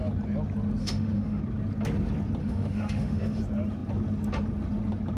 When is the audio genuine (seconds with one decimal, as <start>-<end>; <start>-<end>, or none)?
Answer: 0.0-0.8; 1.4-2.4; 3.4-5.2